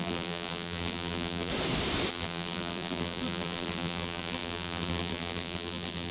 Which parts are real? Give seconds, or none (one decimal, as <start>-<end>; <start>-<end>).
1.5-2.1